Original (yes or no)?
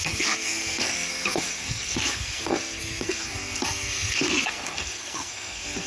no